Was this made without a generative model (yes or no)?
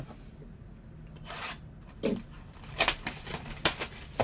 yes